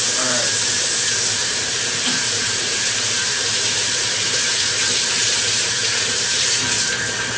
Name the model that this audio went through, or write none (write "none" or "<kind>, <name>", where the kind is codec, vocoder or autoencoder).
vocoder, BigVGAN v2